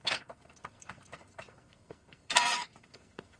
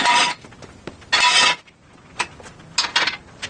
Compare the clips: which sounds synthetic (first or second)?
first